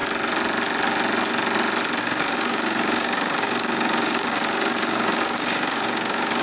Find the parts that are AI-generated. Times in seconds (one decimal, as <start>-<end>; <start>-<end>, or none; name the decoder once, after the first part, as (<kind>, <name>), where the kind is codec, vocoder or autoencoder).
2.0-6.4 (codec, DAC)